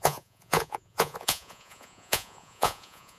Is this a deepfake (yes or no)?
yes